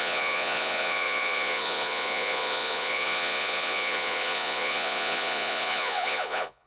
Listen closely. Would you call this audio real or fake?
fake